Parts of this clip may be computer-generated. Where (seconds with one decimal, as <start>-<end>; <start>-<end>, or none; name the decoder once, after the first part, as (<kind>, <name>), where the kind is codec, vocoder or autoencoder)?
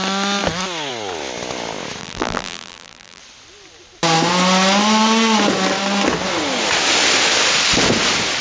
2.0-3.2 (vocoder, BigVGAN v2)